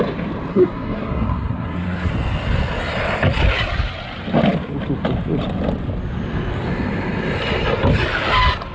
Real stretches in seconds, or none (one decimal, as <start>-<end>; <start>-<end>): 0.0-0.5; 2.1-8.7